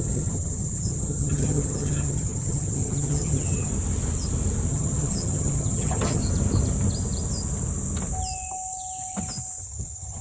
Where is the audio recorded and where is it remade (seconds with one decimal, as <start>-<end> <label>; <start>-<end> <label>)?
0.0-3.7 remade; 3.7-4.7 recorded; 4.7-6.2 remade; 6.2-9.6 recorded; 9.6-10.2 remade